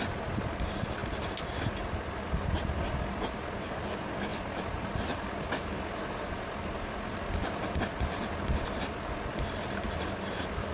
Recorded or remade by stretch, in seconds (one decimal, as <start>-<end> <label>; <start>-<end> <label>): 0.0-10.7 recorded